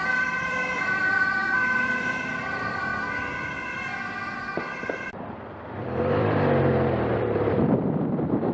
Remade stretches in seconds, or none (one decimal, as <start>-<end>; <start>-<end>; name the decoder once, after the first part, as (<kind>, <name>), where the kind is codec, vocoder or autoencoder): 0.0-2.9 (vocoder, BigVGAN v2); 5.1-8.5